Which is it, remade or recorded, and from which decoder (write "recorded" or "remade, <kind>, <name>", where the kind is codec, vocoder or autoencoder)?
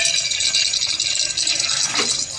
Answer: recorded